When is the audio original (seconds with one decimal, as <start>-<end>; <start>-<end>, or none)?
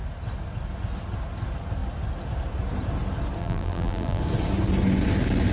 0.0-3.4; 4.2-5.5